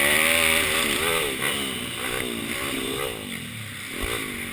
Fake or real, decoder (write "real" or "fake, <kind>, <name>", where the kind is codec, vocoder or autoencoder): real